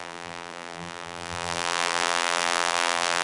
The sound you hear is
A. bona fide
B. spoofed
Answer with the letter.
B